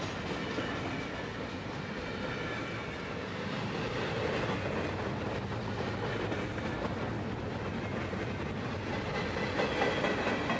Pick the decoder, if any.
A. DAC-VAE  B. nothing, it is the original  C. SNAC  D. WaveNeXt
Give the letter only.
B